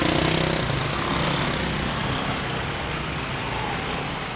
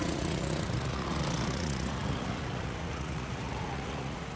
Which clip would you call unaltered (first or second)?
first